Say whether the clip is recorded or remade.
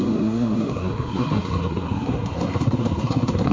remade